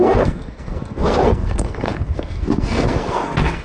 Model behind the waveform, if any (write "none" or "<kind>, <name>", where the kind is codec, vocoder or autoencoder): codec, SNAC